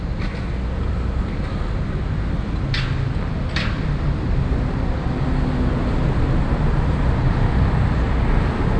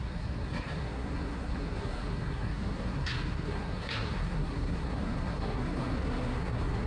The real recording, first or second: first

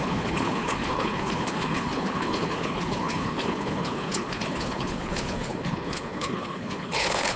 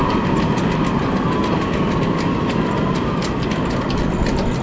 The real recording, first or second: second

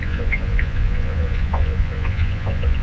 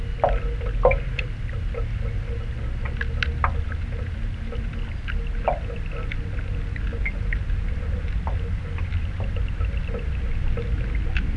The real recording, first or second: second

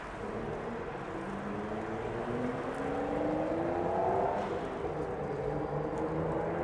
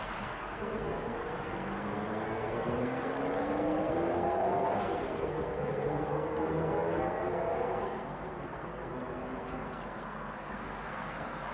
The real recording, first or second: first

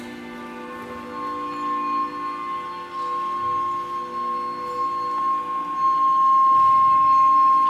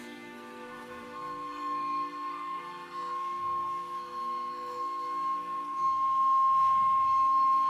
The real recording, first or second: first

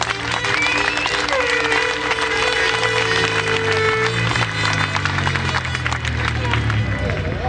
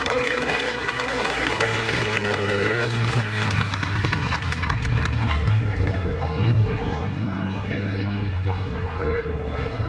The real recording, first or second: first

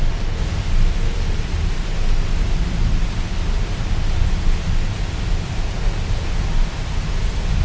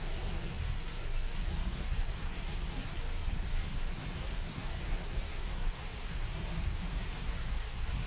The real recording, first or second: first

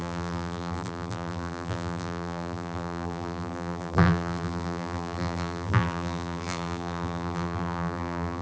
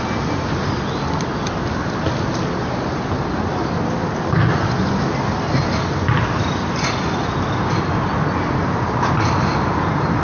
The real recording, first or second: second